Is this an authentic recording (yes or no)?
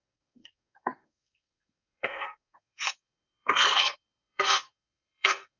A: no